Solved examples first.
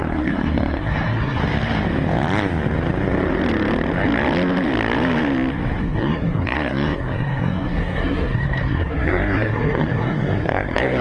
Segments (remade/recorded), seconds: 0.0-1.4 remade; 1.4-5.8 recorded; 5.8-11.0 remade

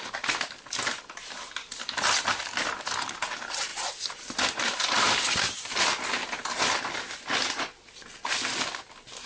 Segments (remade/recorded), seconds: 0.0-3.7 recorded; 3.7-5.8 remade; 5.8-9.3 recorded

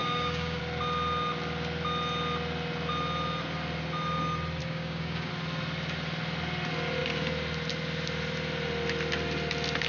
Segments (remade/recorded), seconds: 0.0-0.6 remade; 0.6-4.6 recorded; 4.6-5.3 remade; 5.3-9.9 recorded

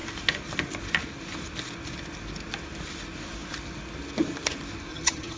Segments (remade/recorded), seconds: 0.0-4.9 recorded; 4.9-5.4 remade

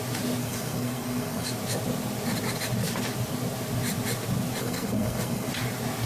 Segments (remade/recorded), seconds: 0.0-0.4 recorded; 0.4-1.5 remade; 1.5-4.6 recorded; 4.6-5.5 remade; 5.5-6.1 recorded

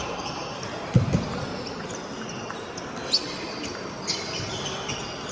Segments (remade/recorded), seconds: 0.0-5.3 recorded

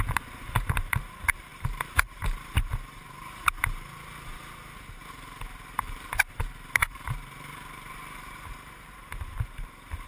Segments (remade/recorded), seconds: 0.0-10.1 remade